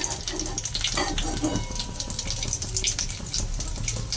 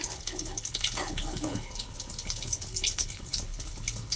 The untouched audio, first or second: first